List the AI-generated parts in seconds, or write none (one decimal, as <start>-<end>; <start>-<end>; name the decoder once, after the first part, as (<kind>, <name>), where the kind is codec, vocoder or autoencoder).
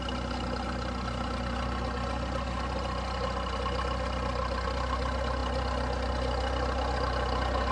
none